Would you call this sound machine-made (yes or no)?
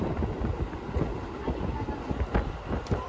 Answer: no